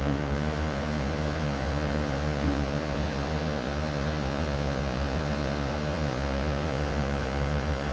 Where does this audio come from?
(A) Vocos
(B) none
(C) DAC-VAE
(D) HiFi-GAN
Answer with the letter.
A